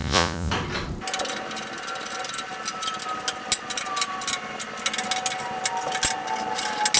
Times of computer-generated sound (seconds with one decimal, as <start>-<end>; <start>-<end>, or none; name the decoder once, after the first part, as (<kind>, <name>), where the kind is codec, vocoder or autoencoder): 0.0-0.5 (vocoder, Vocos)